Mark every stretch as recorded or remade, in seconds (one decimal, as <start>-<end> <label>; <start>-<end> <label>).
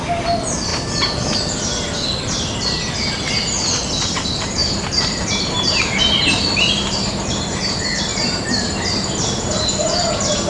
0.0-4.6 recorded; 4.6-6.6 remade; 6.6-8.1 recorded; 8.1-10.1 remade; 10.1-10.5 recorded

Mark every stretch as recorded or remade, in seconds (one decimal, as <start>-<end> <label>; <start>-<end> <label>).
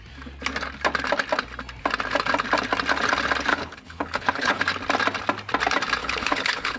0.0-3.5 recorded; 3.5-4.6 remade; 4.6-6.0 recorded; 6.0-6.8 remade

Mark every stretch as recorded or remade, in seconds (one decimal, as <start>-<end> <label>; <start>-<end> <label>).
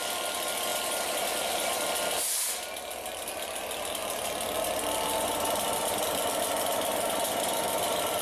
0.0-0.7 recorded; 0.7-2.0 remade; 2.0-4.0 recorded; 4.0-6.4 remade; 6.4-8.2 recorded